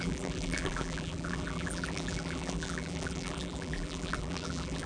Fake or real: fake